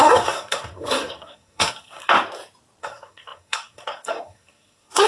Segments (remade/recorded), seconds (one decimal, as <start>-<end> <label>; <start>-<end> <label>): 0.0-2.0 remade; 2.0-2.8 recorded; 2.8-5.1 remade

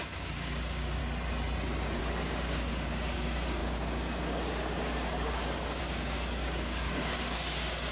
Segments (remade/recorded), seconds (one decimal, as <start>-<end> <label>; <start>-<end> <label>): 0.0-1.0 remade; 1.0-2.0 recorded; 2.0-7.9 remade

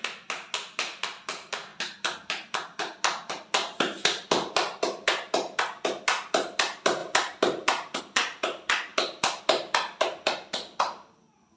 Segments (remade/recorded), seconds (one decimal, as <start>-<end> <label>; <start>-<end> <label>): 0.0-7.0 recorded; 7.0-8.0 remade; 8.0-11.6 recorded

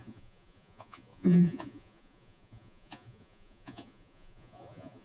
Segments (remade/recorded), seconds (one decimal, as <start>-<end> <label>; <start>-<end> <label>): 0.0-5.0 remade

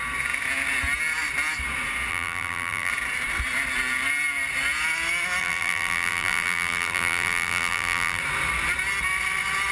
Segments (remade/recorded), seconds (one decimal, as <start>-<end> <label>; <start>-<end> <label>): 0.0-2.1 recorded; 2.1-2.9 remade; 2.9-5.4 recorded; 5.4-8.2 remade; 8.2-9.7 recorded

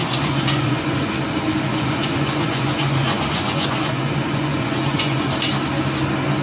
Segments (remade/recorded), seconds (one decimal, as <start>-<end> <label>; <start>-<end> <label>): 0.0-1.1 remade; 1.1-1.7 recorded; 1.7-5.3 remade; 5.3-6.4 recorded

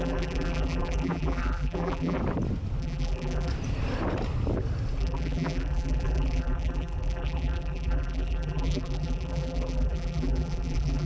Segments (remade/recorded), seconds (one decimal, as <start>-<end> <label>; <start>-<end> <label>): 0.0-2.2 remade; 2.2-2.8 recorded; 2.8-3.5 remade; 3.5-5.0 recorded; 5.0-11.1 remade